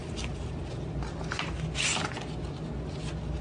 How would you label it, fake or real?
real